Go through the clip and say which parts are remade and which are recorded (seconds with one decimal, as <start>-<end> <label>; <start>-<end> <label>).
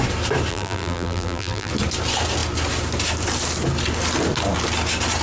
0.0-0.5 recorded; 0.5-1.7 remade; 1.7-5.2 recorded